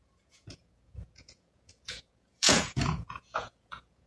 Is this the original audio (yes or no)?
no